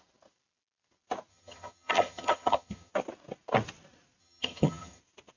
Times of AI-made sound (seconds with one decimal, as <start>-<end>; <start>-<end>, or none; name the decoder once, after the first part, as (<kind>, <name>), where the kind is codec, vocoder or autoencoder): 1.3-2.9 (vocoder, HiFi-GAN); 4.2-5.0